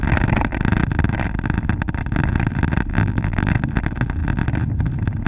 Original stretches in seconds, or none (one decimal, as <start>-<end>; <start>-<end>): 0.0-2.9; 3.5-5.3